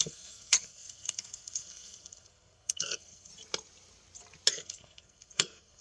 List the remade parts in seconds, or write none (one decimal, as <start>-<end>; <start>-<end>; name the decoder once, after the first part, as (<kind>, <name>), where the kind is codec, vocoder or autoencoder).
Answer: 0.0-3.3 (codec, SNAC); 4.5-5.8